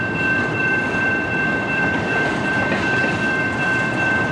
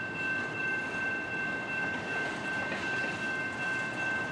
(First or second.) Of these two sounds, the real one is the second